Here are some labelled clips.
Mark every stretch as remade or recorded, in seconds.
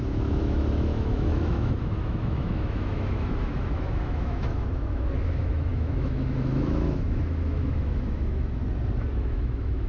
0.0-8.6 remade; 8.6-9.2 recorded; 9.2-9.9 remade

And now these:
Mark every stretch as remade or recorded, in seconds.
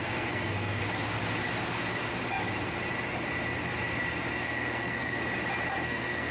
0.0-0.8 remade; 0.8-4.4 recorded; 4.4-5.2 remade; 5.2-5.8 recorded; 5.8-6.3 remade